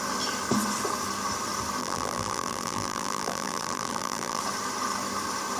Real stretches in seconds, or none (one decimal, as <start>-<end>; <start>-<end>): 0.0-1.8; 4.4-5.6